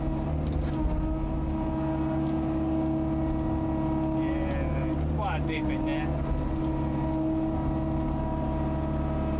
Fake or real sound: real